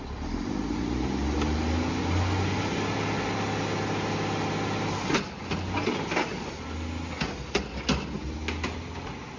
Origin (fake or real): real